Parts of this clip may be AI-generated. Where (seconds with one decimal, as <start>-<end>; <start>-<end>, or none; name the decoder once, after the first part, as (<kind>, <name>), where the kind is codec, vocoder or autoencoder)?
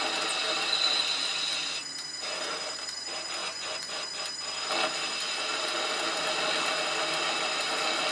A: 3.4-4.1 (vocoder, Vocos)